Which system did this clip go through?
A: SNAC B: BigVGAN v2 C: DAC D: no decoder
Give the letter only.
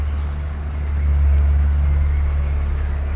D